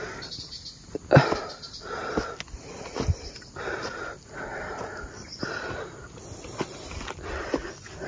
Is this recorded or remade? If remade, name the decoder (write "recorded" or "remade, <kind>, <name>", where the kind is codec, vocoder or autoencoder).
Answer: recorded